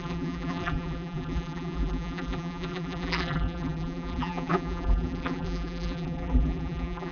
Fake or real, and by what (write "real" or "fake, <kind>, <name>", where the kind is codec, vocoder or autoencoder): fake, vocoder, BigVGAN v2